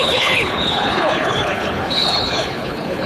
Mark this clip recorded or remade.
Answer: remade